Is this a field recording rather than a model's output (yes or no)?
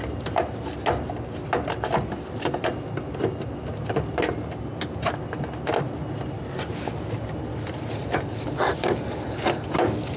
yes